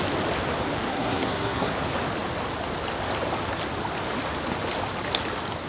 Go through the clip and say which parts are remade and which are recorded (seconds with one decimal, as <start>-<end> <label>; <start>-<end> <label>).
0.0-0.9 recorded; 0.9-1.7 remade; 1.7-5.7 recorded